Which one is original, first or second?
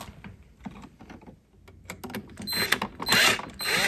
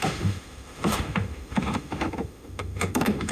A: first